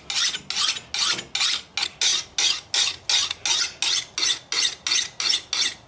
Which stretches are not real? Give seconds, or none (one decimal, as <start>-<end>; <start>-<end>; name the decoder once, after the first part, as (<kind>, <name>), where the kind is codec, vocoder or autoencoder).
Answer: none